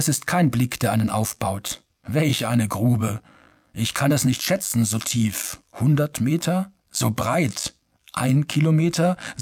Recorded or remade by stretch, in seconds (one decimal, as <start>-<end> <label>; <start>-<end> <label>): 0.0-9.4 remade